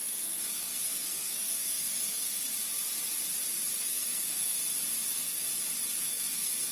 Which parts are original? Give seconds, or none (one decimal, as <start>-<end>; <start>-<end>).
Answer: 2.4-3.8; 4.6-5.1; 5.5-6.0